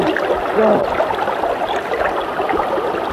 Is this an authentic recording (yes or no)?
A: yes